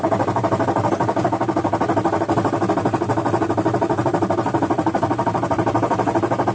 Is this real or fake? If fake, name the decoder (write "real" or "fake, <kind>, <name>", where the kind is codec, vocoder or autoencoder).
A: real